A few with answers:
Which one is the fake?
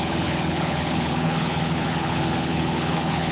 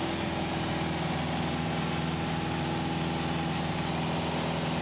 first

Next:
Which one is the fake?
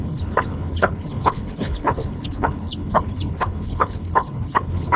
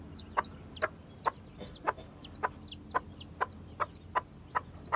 first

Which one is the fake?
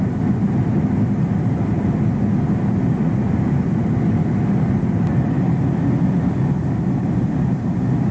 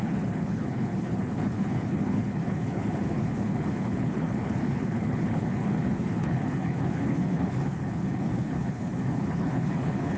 second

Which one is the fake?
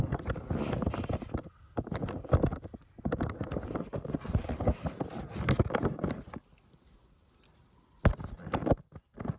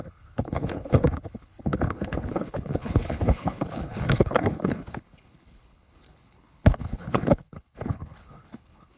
second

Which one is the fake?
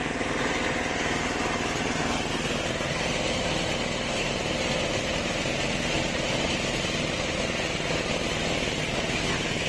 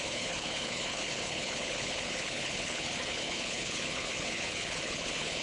second